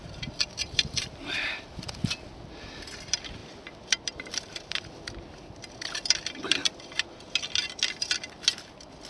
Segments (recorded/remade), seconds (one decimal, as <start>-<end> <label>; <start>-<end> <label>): 0.0-1.9 remade; 1.9-3.4 recorded; 3.4-8.0 remade; 8.0-9.1 recorded